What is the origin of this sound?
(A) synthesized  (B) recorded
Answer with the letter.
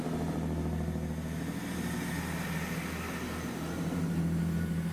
B